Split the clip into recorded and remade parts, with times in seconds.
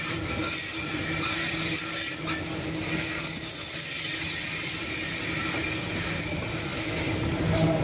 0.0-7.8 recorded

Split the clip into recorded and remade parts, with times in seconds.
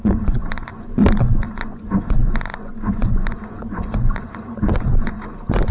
0.0-1.0 remade; 1.0-1.5 recorded; 1.5-5.7 remade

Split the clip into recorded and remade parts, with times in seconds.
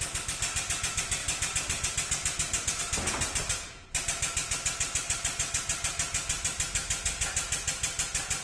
0.0-8.4 recorded